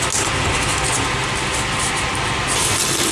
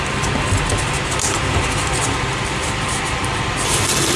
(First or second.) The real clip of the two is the first